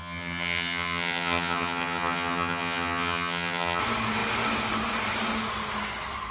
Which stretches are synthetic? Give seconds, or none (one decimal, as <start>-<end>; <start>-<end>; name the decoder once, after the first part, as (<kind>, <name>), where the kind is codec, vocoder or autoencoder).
0.0-3.8 (vocoder, HiFi-GAN)